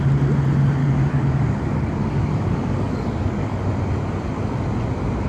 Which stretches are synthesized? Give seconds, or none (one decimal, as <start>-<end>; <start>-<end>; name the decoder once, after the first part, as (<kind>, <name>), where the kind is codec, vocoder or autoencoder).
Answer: 0.8-3.6 (codec, DAC)